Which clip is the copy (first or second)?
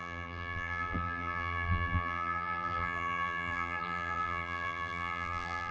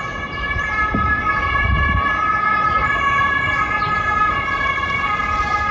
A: first